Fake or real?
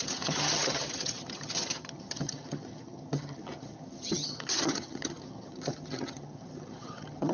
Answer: fake